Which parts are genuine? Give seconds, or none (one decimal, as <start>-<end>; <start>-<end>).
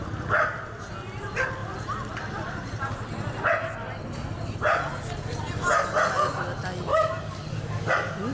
0.0-6.9; 7.9-8.3